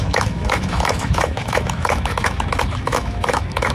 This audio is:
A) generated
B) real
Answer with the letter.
A